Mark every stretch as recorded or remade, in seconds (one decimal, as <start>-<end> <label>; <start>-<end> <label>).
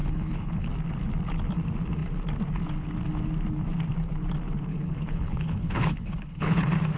0.0-0.7 remade; 0.7-4.7 recorded; 4.7-6.6 remade; 6.6-7.0 recorded